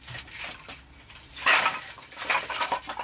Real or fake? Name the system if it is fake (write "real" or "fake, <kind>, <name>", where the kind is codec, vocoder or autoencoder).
real